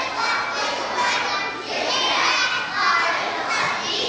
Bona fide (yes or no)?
yes